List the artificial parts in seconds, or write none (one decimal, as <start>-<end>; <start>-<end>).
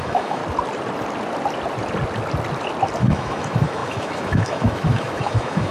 0.0-0.4; 3.0-5.7